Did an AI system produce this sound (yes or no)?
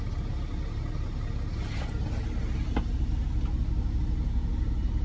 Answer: no